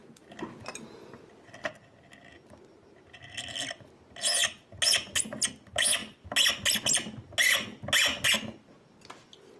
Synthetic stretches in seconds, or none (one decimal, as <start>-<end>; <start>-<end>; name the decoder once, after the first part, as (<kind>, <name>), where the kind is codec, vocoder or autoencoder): none